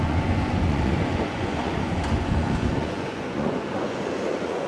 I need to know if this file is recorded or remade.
remade